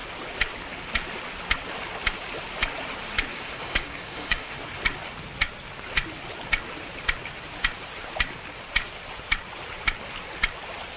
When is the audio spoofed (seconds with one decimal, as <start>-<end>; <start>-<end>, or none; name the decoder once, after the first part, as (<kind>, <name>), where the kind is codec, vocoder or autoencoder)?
3.3-4.5 (codec, DAC)